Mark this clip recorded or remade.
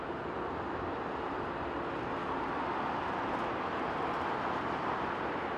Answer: recorded